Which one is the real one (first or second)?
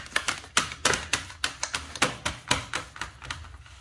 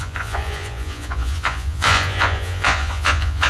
first